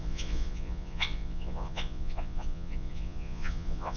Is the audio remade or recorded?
remade